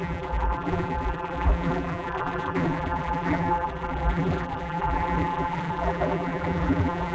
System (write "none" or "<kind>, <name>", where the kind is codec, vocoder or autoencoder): vocoder, BigVGAN v2